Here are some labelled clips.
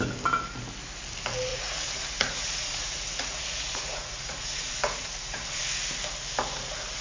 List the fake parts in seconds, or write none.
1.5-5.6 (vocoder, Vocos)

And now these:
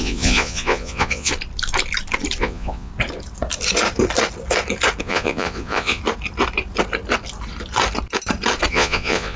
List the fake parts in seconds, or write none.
0.0-1.3 (vocoder, Vocos); 2.4-2.9; 5.0-6.0; 8.7-9.4

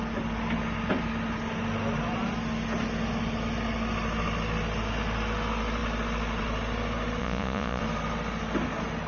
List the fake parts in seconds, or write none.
7.2-7.8 (vocoder, Vocos)